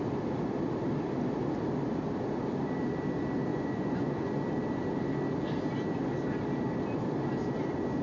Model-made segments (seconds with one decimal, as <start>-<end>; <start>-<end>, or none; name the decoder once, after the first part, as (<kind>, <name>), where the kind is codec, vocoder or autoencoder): 3.5-4.4 (vocoder, Vocos)